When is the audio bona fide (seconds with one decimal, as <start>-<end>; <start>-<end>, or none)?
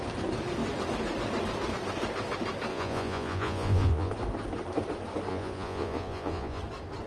0.0-2.7; 4.1-5.3; 6.6-7.1